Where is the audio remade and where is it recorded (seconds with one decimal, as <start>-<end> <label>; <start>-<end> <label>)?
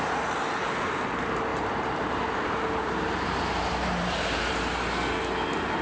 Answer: 0.0-1.5 recorded; 1.5-4.6 remade; 4.6-5.8 recorded